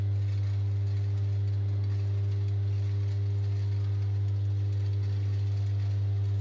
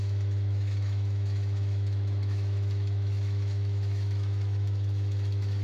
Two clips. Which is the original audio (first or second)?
first